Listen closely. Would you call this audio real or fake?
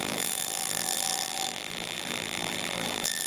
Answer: fake